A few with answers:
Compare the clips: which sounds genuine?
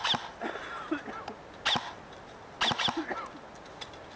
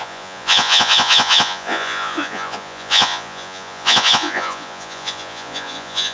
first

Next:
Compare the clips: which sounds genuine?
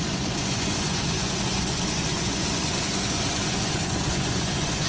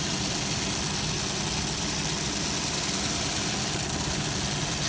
second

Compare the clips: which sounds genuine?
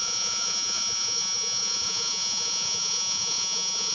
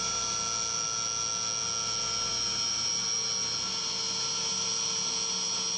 second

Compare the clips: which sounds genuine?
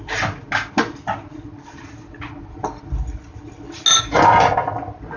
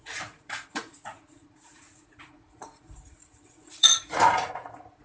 first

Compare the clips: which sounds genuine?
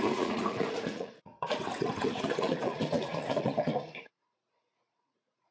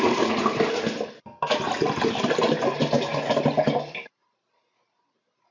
second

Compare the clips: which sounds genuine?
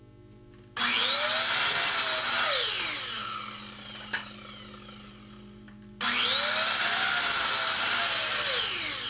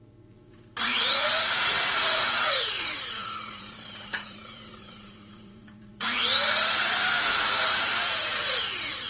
first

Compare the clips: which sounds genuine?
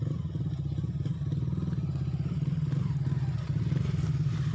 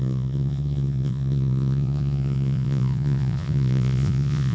first